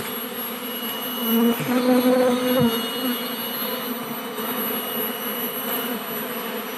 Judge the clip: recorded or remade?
recorded